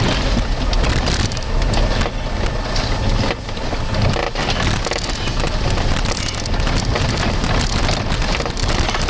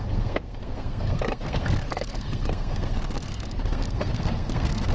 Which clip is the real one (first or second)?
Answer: first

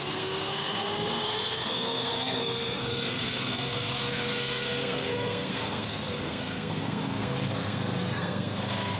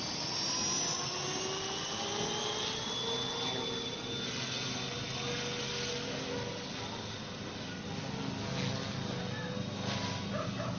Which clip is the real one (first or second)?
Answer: second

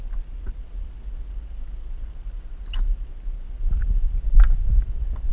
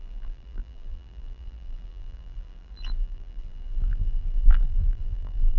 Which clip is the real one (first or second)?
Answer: first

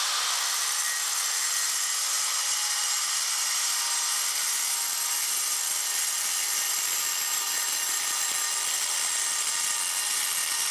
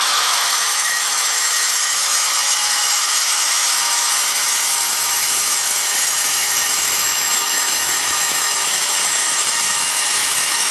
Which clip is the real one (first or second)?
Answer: first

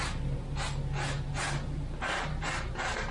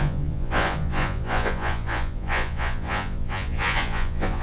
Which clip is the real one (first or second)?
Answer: first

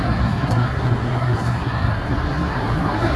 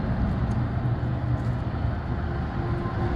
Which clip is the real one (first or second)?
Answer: second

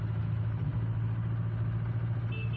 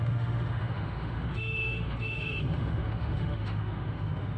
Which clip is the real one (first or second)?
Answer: first